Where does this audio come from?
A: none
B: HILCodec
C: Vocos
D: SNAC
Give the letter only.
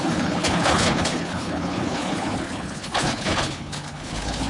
B